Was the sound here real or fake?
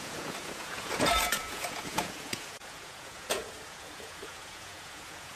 fake